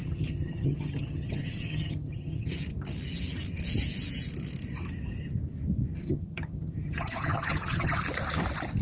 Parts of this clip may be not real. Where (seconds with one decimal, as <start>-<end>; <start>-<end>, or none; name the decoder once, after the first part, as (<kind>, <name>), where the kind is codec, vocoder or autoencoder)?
0.0-2.5 (vocoder, HiFi-GAN); 5.9-8.0